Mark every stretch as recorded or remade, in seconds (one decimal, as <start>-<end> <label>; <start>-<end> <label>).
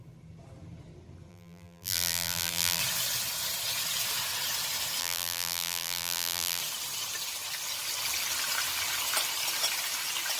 0.0-1.3 recorded; 1.3-2.8 remade; 2.8-5.0 recorded; 5.0-6.6 remade; 6.6-10.4 recorded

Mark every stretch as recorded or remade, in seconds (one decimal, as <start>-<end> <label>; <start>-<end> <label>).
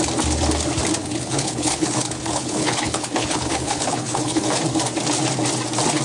0.0-1.0 recorded; 1.0-4.6 remade; 4.6-6.0 recorded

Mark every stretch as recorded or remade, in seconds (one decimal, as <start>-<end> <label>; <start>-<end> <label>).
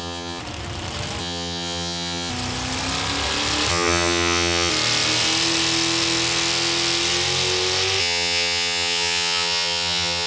0.0-0.4 remade; 0.4-1.2 recorded; 1.2-2.3 remade; 2.3-3.7 recorded; 3.7-4.7 remade; 4.7-8.0 recorded; 8.0-10.3 remade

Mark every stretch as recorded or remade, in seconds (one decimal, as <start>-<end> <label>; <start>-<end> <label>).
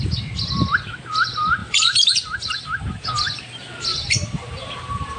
0.0-1.6 recorded; 1.6-3.1 remade; 3.1-3.9 recorded; 3.9-5.2 remade